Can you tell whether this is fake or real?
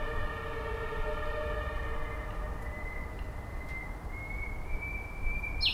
real